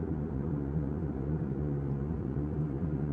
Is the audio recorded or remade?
remade